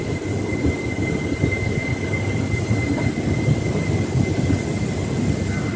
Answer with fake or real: real